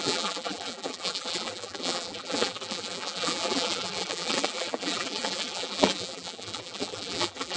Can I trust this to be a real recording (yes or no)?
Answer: no